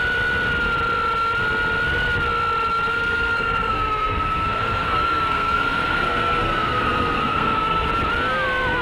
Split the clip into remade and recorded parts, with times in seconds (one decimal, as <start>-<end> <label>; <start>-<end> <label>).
0.0-2.9 recorded; 2.9-7.9 remade; 7.9-8.8 recorded